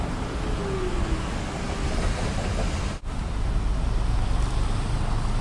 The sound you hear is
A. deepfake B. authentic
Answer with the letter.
B